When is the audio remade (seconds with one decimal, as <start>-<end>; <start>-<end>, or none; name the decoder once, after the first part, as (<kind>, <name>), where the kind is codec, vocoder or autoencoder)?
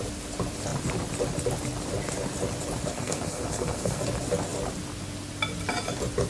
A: 2.9-4.0 (codec, SNAC)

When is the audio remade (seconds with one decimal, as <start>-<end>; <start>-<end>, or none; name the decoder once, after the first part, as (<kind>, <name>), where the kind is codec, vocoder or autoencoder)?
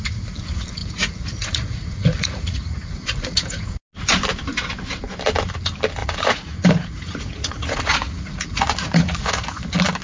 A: 0.8-3.8 (vocoder, Vocos); 6.0-9.6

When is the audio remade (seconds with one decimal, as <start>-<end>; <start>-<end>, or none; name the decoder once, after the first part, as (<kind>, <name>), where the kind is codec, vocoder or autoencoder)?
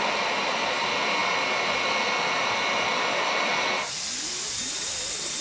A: none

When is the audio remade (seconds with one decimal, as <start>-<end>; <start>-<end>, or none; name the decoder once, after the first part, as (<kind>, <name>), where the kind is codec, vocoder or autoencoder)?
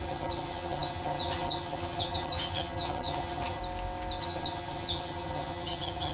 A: 0.0-3.6 (vocoder, HiFi-GAN); 4.2-6.1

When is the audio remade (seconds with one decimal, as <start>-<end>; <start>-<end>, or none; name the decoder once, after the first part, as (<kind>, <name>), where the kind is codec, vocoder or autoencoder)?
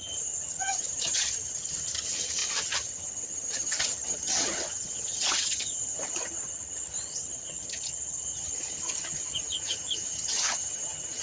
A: 0.0-11.2 (vocoder, HiFi-GAN)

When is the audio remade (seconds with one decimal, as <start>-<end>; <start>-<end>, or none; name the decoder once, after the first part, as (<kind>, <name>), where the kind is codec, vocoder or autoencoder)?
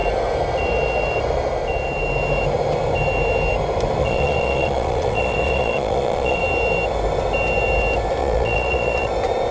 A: 4.0-6.4 (vocoder, Vocos); 8.2-9.1